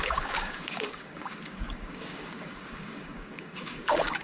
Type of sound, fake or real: fake